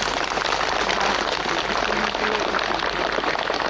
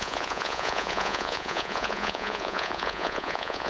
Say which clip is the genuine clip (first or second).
first